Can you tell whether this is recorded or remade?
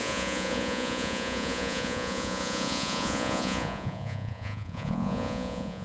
remade